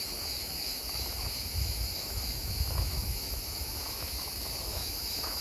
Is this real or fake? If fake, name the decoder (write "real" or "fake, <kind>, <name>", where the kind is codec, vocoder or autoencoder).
fake, autoencoder, DAC-VAE